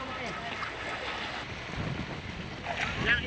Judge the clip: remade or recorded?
recorded